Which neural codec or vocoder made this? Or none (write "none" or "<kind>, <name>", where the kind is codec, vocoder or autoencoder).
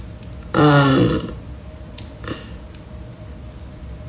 vocoder, BigVGAN v2